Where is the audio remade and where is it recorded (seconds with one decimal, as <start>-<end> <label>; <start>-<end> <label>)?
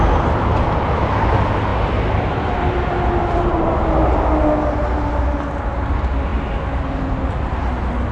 0.0-1.7 recorded; 1.7-2.6 remade; 2.6-3.2 recorded; 3.2-3.8 remade; 3.8-8.1 recorded